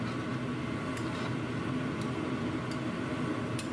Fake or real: real